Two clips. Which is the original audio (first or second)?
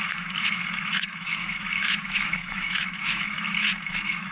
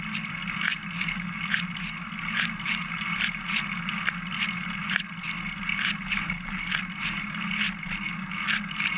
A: second